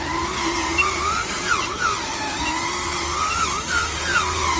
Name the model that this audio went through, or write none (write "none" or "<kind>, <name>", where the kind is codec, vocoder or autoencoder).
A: vocoder, BigVGAN v2